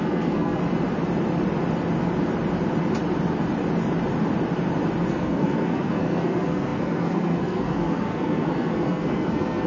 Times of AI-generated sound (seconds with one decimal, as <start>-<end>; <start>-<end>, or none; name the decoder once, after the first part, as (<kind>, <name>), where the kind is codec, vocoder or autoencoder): 0.0-0.6 (codec, SNAC); 5.1-9.7